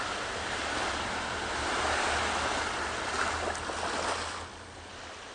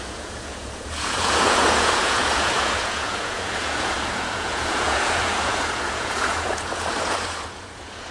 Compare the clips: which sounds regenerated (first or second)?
second